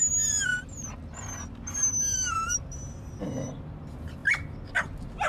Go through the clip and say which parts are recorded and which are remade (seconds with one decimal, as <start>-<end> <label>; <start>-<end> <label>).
0.0-5.3 recorded